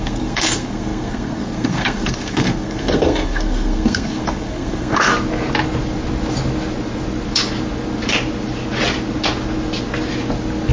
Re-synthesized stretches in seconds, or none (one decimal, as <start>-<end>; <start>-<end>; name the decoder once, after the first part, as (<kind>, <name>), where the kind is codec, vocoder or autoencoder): 0.0-5.1 (codec, SNAC)